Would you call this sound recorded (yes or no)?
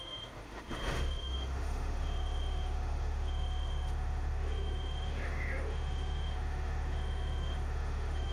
no